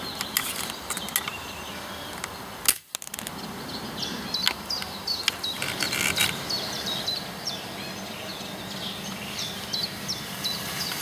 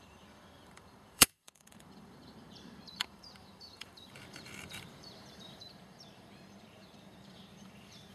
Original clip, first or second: first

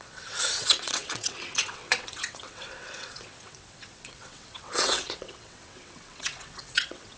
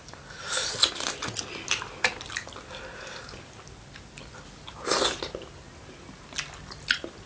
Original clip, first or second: second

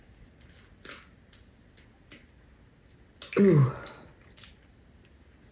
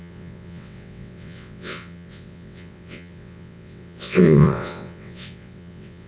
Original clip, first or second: first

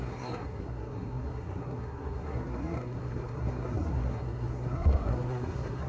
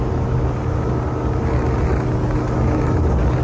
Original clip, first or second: second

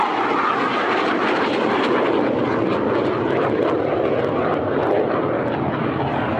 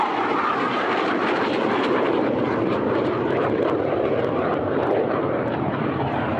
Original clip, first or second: first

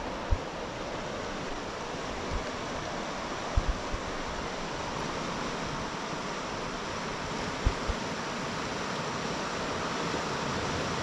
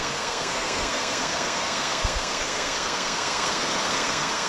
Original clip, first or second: first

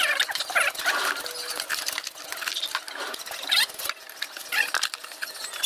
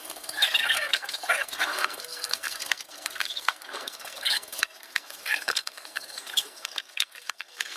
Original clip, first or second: first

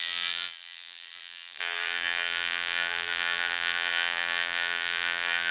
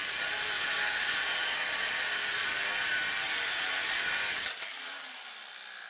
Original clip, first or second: second